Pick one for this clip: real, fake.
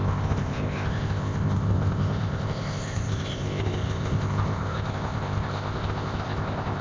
fake